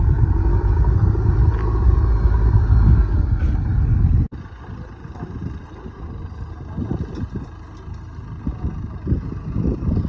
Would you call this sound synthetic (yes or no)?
no